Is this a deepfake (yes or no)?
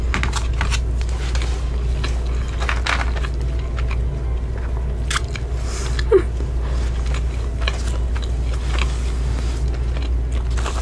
no